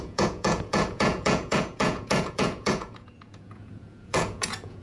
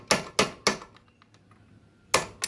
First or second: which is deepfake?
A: first